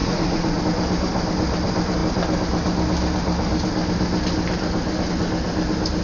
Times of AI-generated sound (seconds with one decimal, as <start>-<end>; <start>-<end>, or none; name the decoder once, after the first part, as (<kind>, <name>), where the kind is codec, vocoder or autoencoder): 0.0-0.6 (vocoder, Vocos)